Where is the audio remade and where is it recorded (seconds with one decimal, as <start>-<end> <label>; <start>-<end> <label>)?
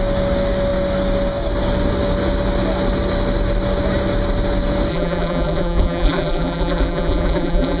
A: 0.0-4.9 recorded; 4.9-7.8 remade